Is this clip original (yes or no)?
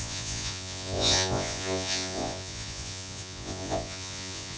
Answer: no